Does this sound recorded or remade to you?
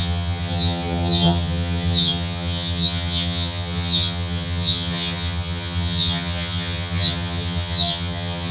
remade